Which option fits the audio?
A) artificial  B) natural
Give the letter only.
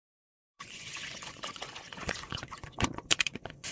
A